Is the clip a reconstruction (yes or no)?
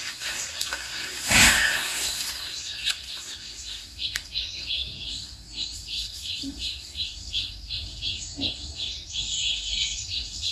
yes